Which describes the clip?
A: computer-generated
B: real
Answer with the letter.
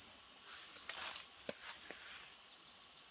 B